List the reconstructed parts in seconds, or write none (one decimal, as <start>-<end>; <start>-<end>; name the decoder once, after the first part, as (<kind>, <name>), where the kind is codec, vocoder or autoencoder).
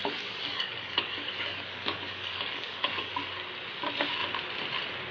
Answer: 0.0-3.1 (codec, DAC)